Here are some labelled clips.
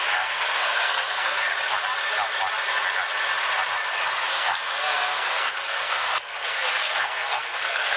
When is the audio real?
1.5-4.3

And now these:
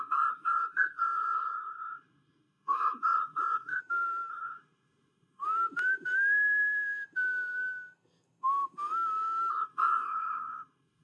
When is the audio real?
3.8-4.3; 5.4-9.5

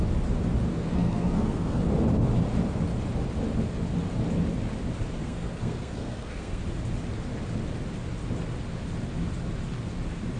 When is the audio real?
0.0-0.7; 1.8-5.2; 6.6-10.4

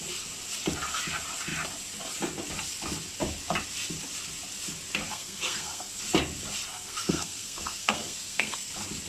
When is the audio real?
0.0-5.1; 6.0-6.7; 8.7-9.1

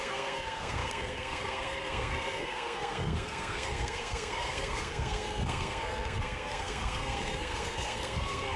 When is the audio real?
none

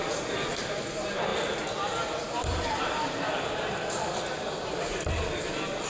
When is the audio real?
0.0-5.9